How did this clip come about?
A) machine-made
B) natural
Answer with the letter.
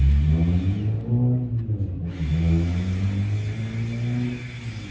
B